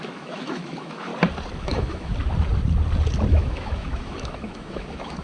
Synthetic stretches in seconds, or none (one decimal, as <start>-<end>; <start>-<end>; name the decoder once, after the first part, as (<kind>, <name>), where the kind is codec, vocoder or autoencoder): 0.0-1.1 (autoencoder, DAC-VAE); 1.6-2.1; 3.3-5.2